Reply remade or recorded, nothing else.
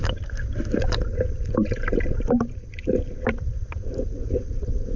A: remade